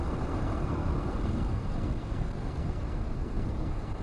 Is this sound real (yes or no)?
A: no